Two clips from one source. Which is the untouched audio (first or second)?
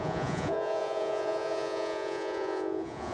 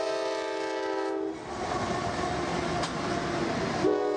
second